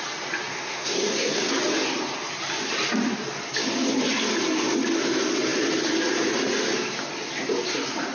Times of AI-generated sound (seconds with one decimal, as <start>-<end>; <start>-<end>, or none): 0.5-1.6